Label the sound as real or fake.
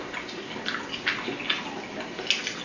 real